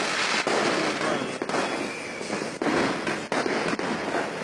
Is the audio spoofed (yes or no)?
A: no